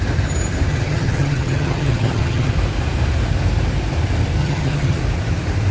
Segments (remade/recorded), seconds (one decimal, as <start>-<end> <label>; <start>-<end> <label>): 0.0-0.7 recorded; 0.7-2.5 remade; 2.5-4.4 recorded; 4.4-5.0 remade; 5.0-5.7 recorded